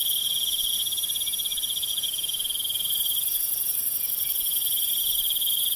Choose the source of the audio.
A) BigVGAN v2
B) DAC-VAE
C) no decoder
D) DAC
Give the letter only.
A